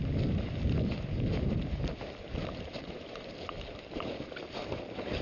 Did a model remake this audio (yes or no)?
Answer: yes